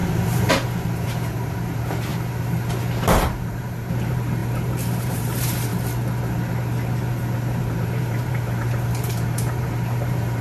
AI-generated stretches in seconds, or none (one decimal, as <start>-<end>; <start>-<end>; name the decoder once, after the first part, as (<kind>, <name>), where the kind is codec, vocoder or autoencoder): 0.0-2.1 (vocoder, BigVGAN v2); 3.0-5.7; 7.6-10.4